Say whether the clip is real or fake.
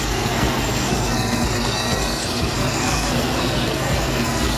fake